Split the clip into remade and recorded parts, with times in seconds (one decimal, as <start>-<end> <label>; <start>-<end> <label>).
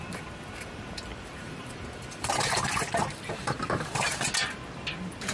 0.0-1.1 recorded; 1.1-4.3 remade; 4.3-5.3 recorded